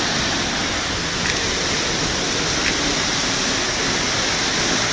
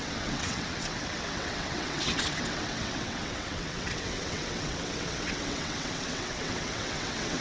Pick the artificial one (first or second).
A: second